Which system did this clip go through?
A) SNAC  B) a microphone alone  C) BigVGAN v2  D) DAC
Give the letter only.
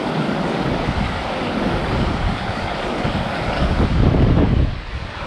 D